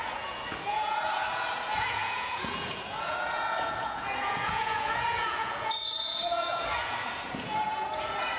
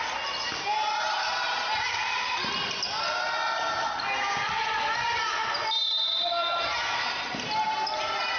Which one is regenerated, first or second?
first